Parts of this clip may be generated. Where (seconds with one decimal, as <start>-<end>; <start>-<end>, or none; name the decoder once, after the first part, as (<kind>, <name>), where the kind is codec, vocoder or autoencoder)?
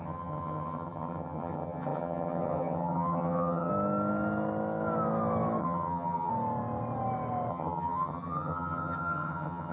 0.0-3.7 (vocoder, HiFi-GAN); 5.6-6.3; 7.5-9.7